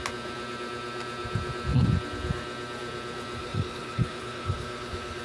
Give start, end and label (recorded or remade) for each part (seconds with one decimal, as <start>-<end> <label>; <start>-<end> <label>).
0.0-3.4 recorded; 3.4-5.2 remade